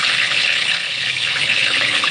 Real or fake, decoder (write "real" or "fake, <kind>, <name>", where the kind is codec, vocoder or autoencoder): fake, codec, HILCodec